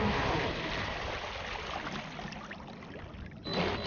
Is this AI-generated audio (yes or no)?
no